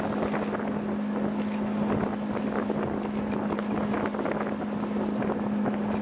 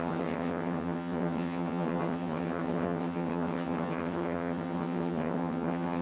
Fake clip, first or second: second